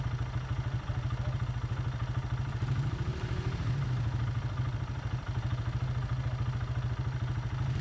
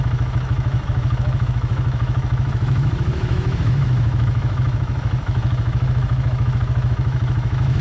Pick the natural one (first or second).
first